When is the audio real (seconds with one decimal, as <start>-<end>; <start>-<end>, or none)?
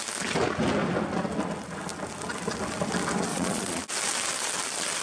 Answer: 0.0-3.3; 3.8-5.0